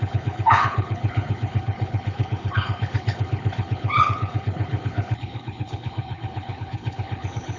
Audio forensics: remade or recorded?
remade